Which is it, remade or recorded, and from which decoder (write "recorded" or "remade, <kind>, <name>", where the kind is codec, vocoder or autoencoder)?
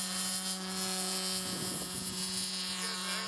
remade, vocoder, Vocos